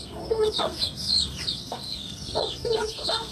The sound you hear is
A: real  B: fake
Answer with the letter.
B